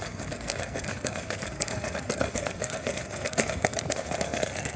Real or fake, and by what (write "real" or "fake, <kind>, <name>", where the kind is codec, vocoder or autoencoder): fake, codec, SNAC